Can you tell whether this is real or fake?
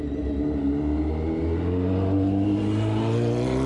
real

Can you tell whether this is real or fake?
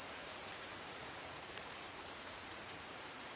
fake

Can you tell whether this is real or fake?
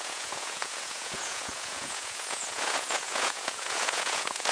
fake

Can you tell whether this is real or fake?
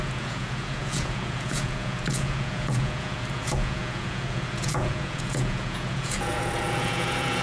fake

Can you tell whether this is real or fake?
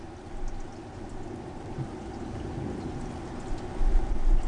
real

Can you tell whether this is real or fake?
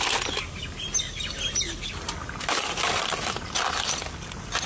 real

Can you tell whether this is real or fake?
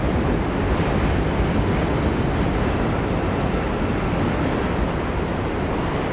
real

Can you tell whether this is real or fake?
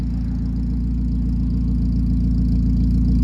real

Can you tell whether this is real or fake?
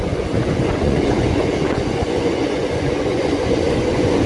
fake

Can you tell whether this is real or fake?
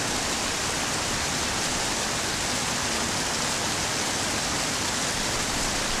real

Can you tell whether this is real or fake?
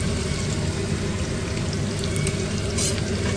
real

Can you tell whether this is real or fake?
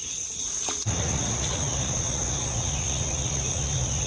fake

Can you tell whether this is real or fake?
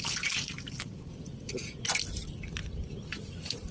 real